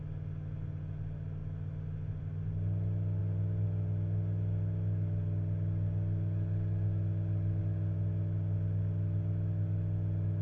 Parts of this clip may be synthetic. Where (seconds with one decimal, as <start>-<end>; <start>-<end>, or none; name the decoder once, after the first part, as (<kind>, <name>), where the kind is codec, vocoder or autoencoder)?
none